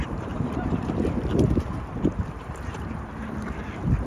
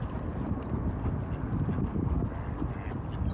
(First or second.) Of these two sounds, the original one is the second